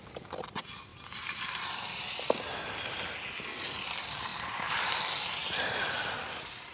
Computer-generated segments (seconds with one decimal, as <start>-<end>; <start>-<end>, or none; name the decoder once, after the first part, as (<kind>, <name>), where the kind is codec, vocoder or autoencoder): 0.9-1.6 (vocoder, BigVGAN v2); 4.3-5.0; 5.4-6.1